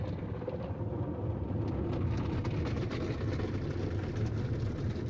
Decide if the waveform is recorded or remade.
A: recorded